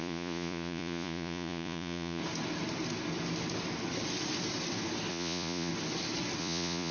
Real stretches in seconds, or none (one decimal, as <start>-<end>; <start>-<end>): 2.2-5.1; 5.7-6.4